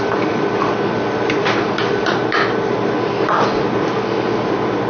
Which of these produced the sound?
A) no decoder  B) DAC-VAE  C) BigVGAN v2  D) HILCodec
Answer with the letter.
A